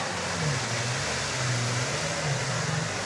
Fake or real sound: real